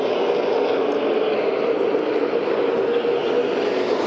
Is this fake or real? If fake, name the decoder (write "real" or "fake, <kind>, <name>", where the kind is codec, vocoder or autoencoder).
real